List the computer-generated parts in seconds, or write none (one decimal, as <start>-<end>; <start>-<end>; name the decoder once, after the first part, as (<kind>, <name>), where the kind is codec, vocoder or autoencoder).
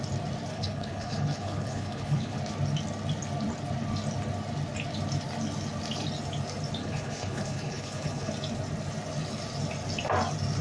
0.5-2.4 (codec, HILCodec); 6.8-8.3